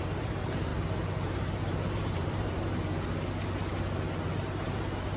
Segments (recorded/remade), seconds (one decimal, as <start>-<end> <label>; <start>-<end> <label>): 0.0-0.7 remade; 0.7-1.9 recorded; 1.9-2.6 remade; 2.6-4.4 recorded; 4.4-5.2 remade